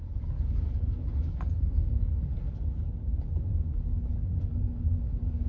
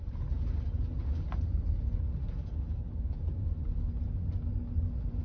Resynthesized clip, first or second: first